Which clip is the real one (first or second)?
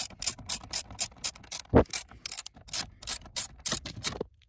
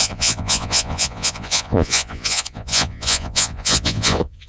first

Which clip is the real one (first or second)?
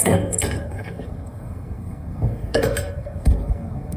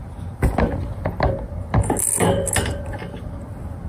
second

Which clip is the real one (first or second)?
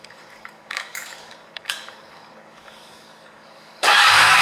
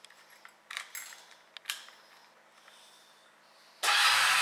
second